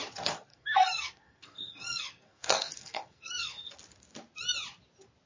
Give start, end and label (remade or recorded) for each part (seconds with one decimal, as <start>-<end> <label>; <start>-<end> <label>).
0.0-0.5 recorded; 0.5-3.7 remade; 3.7-5.3 recorded